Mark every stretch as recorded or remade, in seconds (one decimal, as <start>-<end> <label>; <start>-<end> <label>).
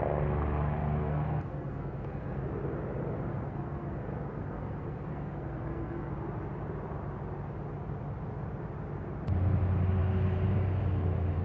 0.0-1.0 recorded; 1.0-2.4 remade; 2.4-3.3 recorded; 3.3-6.1 remade; 6.1-11.4 recorded